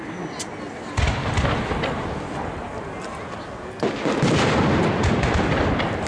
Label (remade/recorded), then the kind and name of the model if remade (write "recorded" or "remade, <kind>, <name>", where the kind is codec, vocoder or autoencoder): recorded